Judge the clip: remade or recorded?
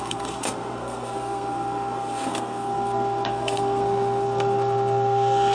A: remade